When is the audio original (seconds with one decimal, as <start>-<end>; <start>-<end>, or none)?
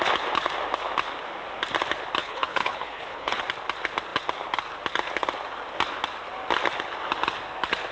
0.0-2.2; 3.4-7.9